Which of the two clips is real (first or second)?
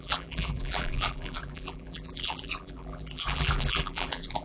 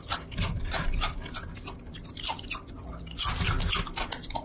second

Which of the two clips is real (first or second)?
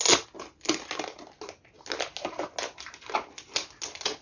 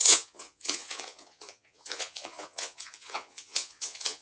first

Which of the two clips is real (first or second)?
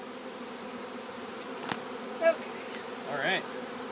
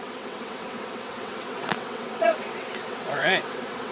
first